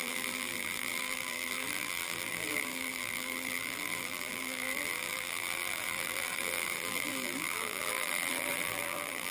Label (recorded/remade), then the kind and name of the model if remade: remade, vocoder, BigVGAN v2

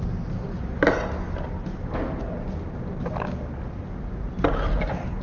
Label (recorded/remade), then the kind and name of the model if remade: recorded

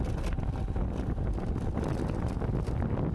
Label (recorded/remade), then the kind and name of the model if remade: recorded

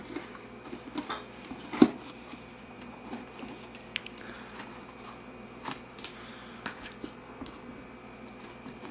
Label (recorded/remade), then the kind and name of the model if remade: remade, vocoder, BigVGAN v2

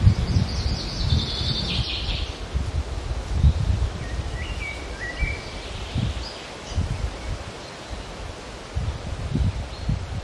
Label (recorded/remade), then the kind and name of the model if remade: recorded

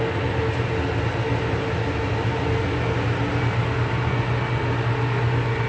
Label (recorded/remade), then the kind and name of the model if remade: recorded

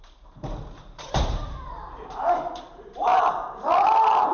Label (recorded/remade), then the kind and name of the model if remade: remade, vocoder, BigVGAN v2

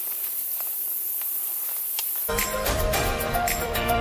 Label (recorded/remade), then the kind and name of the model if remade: remade, vocoder, BigVGAN v2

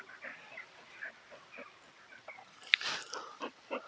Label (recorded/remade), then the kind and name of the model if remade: recorded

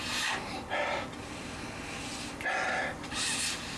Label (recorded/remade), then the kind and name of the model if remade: recorded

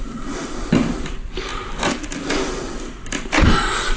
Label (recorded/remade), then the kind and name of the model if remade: remade, vocoder, BigVGAN v2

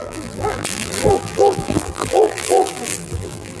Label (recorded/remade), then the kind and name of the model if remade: remade, vocoder, BigVGAN v2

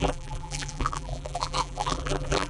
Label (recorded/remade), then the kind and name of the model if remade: remade, vocoder, BigVGAN v2